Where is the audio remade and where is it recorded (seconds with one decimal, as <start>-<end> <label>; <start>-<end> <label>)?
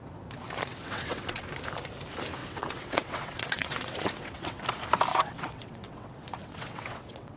0.0-0.7 recorded; 0.7-1.4 remade; 1.4-2.4 recorded; 2.4-4.6 remade; 4.6-5.1 recorded; 5.1-7.4 remade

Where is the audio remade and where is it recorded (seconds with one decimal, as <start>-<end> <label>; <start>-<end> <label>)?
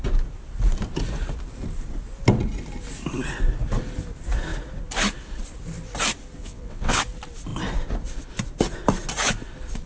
0.0-6.4 recorded; 6.4-7.0 remade; 7.0-9.9 recorded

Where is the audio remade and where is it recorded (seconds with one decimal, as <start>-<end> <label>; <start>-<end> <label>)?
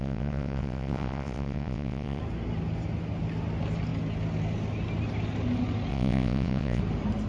0.0-2.2 remade; 2.2-5.9 recorded; 5.9-6.8 remade; 6.8-7.3 recorded